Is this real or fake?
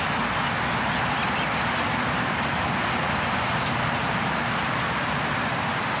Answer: real